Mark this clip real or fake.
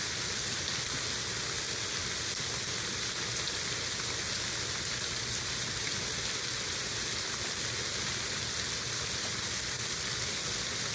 real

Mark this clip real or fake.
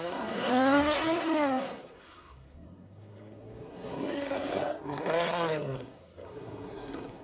fake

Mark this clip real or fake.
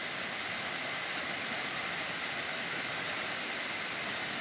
real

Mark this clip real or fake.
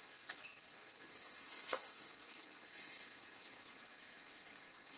fake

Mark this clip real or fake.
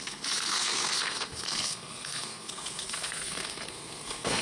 fake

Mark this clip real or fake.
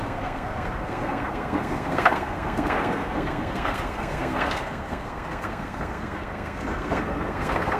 fake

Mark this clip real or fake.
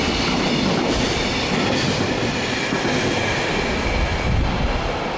real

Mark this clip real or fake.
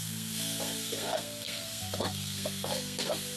fake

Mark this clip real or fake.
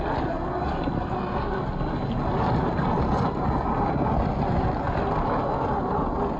real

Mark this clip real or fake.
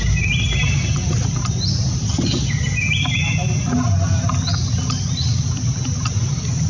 real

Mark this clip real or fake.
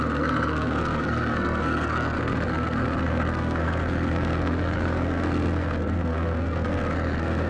fake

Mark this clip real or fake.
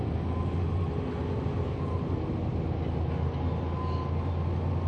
real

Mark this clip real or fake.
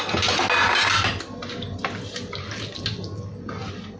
real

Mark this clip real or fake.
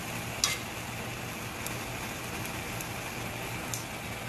real